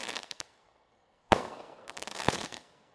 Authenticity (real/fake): fake